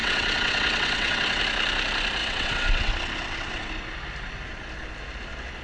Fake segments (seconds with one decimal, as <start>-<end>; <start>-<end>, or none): 0.0-1.4; 2.2-3.7